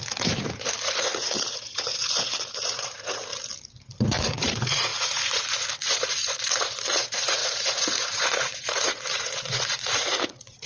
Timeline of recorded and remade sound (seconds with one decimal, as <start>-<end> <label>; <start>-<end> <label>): 0.0-3.3 remade; 3.3-4.0 recorded; 4.0-10.7 remade

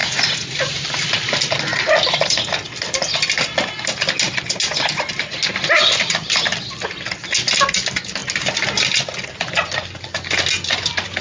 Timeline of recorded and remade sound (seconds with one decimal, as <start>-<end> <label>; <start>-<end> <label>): 0.0-0.7 remade; 0.7-11.2 recorded

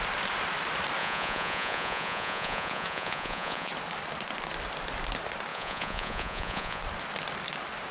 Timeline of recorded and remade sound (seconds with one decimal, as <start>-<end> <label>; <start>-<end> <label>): 0.0-1.0 recorded; 1.0-3.7 remade; 3.7-5.5 recorded; 5.5-6.8 remade; 6.8-7.9 recorded

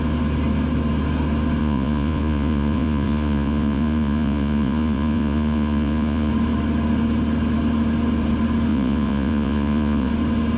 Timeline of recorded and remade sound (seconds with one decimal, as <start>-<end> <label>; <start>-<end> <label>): 0.0-1.6 recorded; 1.6-6.3 remade; 6.3-8.7 recorded; 8.7-10.1 remade; 10.1-10.6 recorded

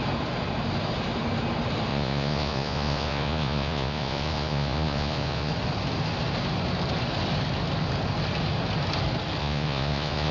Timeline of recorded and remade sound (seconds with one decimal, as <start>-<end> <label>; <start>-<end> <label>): 0.0-1.9 recorded; 1.9-5.5 remade; 5.5-9.4 recorded; 9.4-10.3 remade

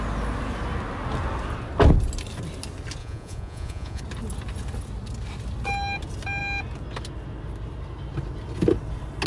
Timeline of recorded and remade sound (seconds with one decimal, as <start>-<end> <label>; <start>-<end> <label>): 0.0-3.0 recorded; 3.0-4.0 remade; 4.0-9.3 recorded

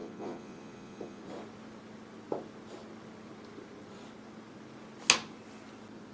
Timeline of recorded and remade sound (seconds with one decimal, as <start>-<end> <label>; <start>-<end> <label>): 0.0-1.2 remade; 1.2-6.1 recorded

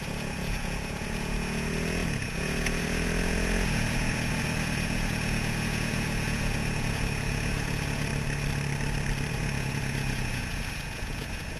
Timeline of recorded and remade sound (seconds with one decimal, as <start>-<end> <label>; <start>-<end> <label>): 0.0-8.1 remade; 8.1-9.3 recorded; 9.3-11.6 remade